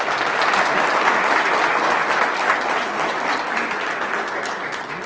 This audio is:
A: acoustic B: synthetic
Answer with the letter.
A